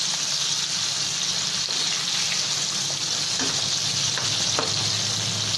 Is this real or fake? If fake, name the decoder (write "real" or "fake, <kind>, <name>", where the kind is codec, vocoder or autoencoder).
real